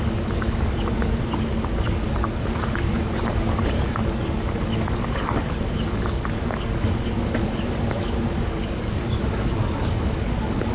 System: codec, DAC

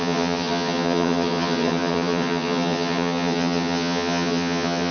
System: vocoder, HiFi-GAN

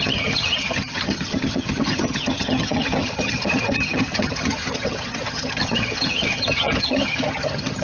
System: vocoder, HiFi-GAN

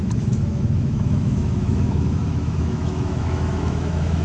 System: autoencoder, DAC-VAE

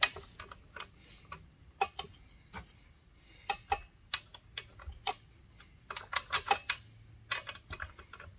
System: none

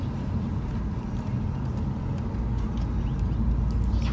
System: none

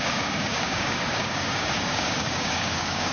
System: codec, DAC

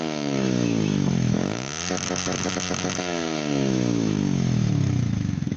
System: autoencoder, DAC-VAE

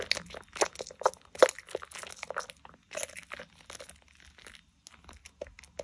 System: none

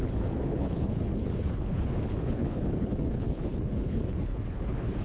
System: codec, HILCodec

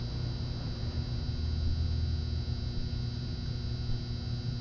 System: none